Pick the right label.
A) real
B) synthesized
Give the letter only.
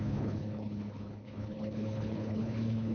B